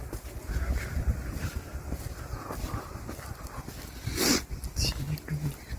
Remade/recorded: recorded